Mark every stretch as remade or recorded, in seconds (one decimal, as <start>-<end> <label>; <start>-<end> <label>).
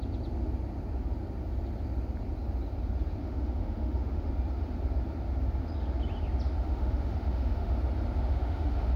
0.0-3.2 recorded; 3.2-4.3 remade; 4.3-6.6 recorded; 6.6-7.7 remade; 7.7-8.3 recorded; 8.3-9.0 remade